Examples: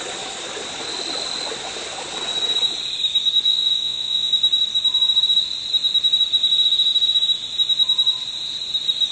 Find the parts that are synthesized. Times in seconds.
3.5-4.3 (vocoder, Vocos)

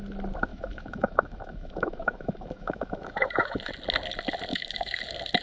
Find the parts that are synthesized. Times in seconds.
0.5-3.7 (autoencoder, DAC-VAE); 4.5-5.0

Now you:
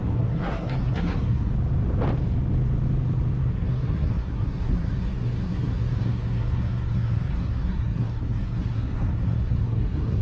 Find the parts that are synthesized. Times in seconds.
0.0-1.5 (codec, SNAC); 3.4-10.2